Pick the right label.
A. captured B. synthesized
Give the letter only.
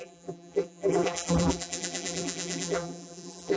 B